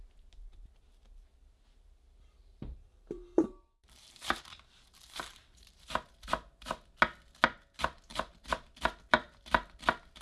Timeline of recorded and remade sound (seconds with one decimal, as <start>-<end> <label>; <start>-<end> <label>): 0.0-2.4 recorded; 2.4-6.7 remade; 6.7-8.1 recorded; 8.1-8.7 remade; 8.7-10.2 recorded